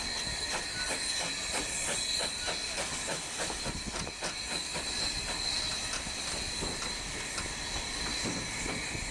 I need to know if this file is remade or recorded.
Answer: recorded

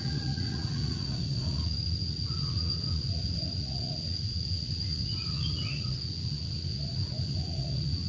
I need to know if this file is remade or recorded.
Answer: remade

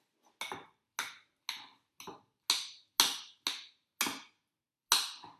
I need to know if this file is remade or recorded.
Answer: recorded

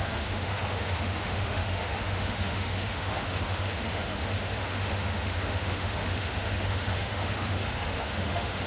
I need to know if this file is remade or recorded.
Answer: remade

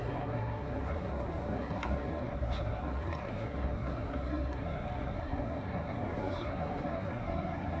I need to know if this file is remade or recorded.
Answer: remade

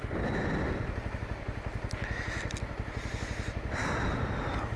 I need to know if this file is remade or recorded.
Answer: recorded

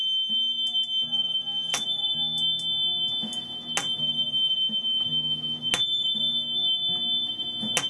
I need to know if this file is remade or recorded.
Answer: recorded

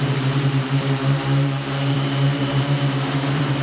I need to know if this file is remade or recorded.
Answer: remade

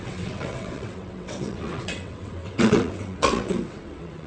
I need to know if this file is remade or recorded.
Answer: remade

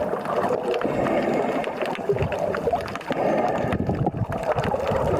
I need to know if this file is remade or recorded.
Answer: remade